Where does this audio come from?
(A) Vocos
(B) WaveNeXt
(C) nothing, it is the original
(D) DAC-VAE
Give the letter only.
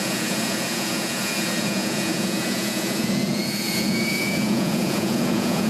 A